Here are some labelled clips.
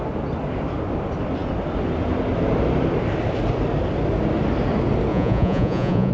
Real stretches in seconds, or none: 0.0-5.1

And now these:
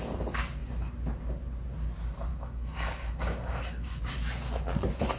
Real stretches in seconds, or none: 0.0-2.3; 4.0-5.2

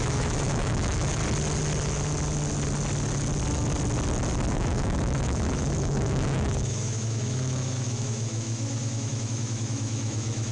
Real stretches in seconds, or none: 1.2-4.5

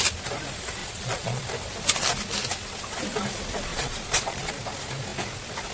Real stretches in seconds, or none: 0.0-0.8; 1.4-3.7; 4.5-5.7